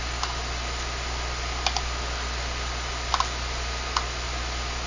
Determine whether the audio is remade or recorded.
recorded